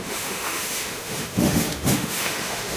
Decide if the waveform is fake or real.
fake